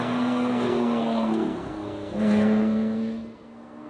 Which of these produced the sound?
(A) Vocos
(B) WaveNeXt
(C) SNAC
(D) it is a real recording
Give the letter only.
C